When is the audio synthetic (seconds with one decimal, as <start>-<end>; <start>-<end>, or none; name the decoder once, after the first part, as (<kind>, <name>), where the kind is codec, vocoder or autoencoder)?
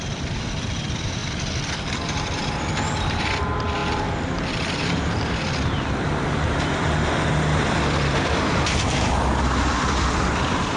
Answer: 0.0-10.8 (vocoder, BigVGAN v2)